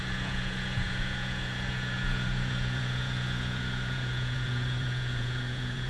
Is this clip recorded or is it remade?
remade